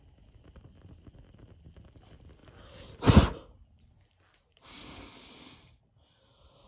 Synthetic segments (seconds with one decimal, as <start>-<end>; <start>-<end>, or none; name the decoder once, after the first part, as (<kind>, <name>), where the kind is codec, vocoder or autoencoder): none